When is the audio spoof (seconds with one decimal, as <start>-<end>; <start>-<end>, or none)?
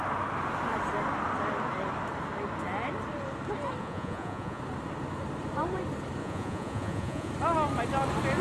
3.8-4.6; 6.2-7.3